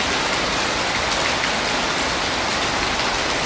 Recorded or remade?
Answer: recorded